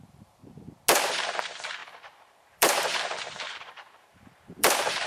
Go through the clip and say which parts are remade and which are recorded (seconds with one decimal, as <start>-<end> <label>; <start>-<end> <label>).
0.0-0.4 remade; 0.4-1.1 recorded; 1.1-5.1 remade